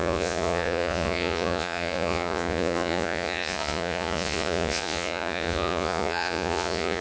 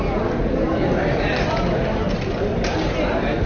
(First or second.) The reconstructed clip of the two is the first